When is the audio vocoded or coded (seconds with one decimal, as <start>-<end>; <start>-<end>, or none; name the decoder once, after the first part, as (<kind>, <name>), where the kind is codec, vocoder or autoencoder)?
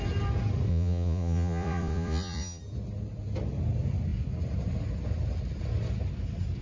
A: 0.7-2.6 (vocoder, Vocos)